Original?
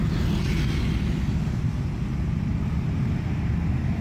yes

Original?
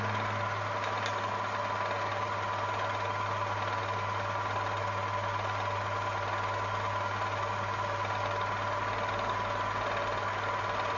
yes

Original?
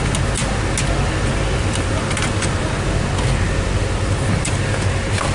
yes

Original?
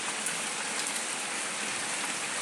yes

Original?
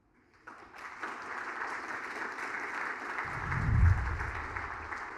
yes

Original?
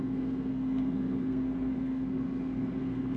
no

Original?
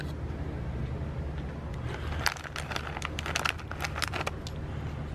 yes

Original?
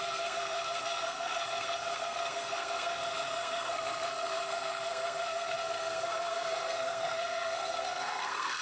no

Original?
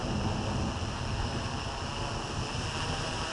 yes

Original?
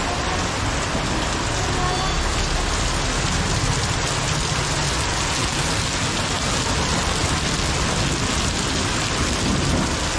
yes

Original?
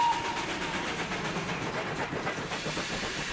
yes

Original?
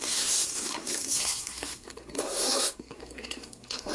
no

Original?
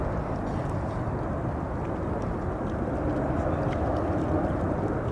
yes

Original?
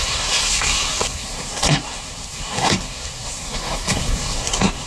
no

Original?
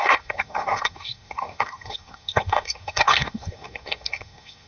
no